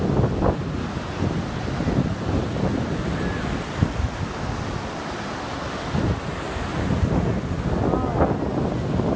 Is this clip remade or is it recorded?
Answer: recorded